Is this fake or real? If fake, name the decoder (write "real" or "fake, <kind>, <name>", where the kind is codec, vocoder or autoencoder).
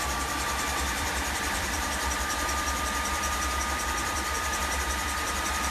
fake, vocoder, BigVGAN v2